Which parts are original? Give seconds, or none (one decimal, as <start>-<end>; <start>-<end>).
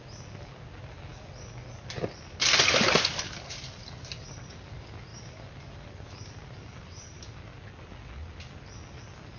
0.0-5.1; 7.2-9.4